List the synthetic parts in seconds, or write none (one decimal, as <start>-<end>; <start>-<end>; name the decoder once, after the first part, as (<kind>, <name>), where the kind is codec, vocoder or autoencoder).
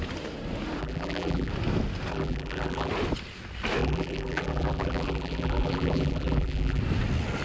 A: 0.8-1.5 (vocoder, BigVGAN v2); 2.1-2.9; 3.8-6.8